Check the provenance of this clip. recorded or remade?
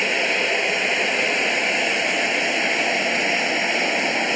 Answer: recorded